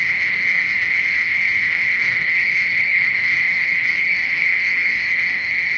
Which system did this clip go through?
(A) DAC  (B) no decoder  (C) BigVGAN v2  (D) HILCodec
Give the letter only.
D